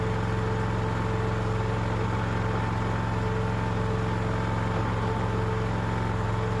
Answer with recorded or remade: recorded